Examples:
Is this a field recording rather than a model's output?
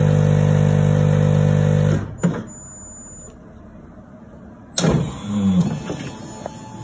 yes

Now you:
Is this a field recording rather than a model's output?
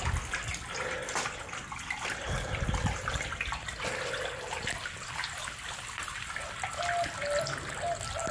yes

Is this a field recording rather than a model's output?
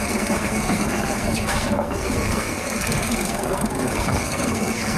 no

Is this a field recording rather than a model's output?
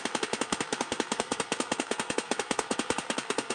no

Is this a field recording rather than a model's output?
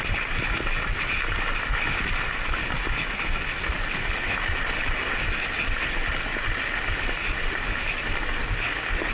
yes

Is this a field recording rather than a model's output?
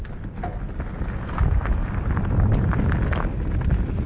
yes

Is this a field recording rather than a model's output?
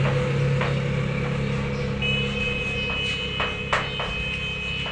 yes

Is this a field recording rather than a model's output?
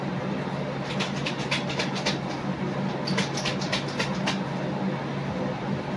yes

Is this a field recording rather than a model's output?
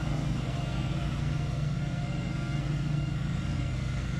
no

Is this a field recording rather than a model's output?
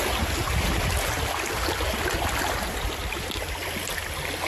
yes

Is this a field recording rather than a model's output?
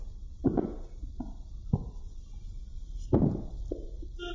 yes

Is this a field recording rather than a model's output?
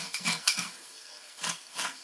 no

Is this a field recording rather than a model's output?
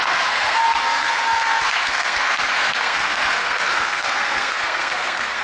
no